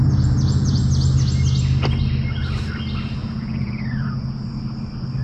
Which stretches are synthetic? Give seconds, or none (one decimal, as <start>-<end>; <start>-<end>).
0.0-0.8; 3.2-4.4